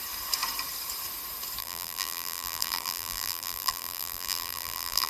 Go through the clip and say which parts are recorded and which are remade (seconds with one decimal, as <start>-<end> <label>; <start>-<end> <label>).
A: 0.0-1.6 recorded; 1.6-5.1 remade